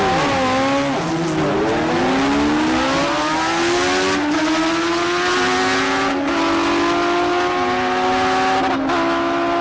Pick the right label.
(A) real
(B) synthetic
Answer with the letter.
A